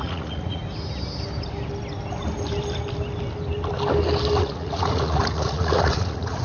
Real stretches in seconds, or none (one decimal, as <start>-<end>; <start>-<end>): 0.6-4.4